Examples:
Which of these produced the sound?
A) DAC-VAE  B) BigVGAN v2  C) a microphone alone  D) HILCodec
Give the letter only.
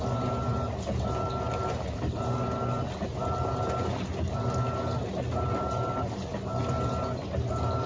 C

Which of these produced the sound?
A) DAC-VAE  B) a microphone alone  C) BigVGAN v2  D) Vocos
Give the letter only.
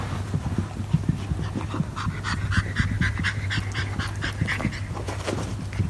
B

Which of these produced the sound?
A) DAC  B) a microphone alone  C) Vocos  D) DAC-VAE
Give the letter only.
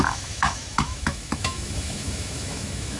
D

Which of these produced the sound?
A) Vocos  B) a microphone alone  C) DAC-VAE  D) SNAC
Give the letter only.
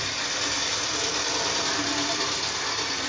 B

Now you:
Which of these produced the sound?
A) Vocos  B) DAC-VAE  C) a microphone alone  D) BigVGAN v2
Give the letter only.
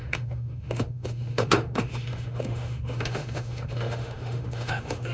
B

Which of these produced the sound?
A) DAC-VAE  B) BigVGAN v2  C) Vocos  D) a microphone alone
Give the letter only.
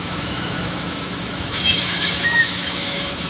A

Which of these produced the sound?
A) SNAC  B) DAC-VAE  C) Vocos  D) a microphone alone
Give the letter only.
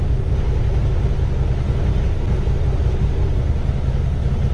D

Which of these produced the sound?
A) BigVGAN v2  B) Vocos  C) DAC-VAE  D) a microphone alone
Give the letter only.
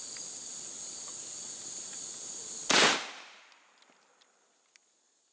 D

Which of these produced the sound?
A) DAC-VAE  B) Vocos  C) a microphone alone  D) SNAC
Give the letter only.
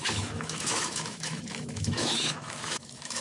A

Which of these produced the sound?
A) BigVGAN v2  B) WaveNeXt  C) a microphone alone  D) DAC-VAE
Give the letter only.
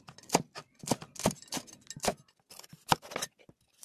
C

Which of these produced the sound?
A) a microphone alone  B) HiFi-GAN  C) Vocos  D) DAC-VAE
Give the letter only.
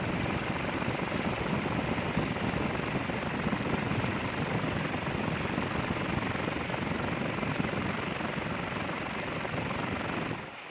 A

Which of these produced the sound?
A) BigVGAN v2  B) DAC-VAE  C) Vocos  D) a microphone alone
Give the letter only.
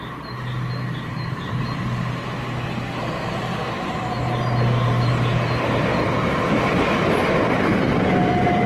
D